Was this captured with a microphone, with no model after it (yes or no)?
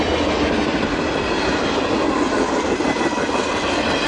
yes